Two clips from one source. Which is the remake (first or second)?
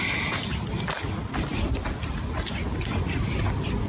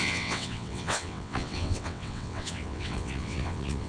second